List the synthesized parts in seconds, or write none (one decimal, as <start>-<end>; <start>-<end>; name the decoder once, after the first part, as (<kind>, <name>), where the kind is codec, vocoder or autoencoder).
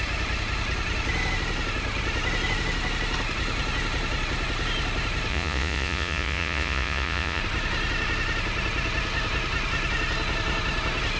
5.3-7.4 (vocoder, Vocos)